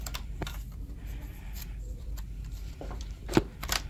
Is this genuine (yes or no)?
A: no